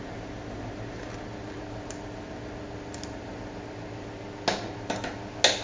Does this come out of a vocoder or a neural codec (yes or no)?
no